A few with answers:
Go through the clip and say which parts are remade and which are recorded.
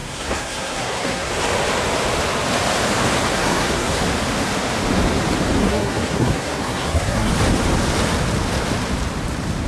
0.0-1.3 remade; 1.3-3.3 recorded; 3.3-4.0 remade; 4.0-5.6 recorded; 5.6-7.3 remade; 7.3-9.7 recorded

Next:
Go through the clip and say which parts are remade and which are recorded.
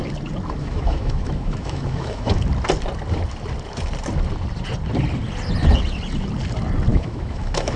0.0-0.6 recorded; 0.6-2.4 remade; 2.4-6.9 recorded; 6.9-7.8 remade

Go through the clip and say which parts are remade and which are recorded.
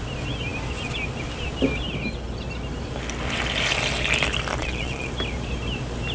0.0-4.6 recorded; 4.6-5.1 remade; 5.1-6.1 recorded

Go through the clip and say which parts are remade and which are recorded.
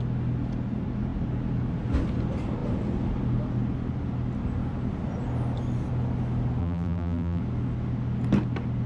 0.0-6.6 recorded; 6.6-7.4 remade; 7.4-8.9 recorded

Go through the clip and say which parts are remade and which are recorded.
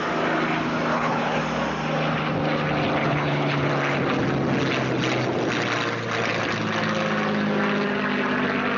0.0-0.9 recorded; 0.9-1.4 remade; 1.4-3.0 recorded; 3.0-3.7 remade; 3.7-8.8 recorded